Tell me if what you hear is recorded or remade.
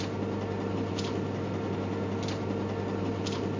recorded